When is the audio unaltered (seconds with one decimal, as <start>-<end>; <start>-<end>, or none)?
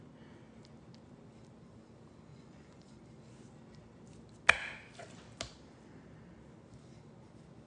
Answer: 0.0-2.3; 3.0-7.7